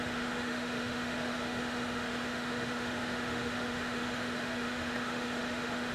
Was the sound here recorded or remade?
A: remade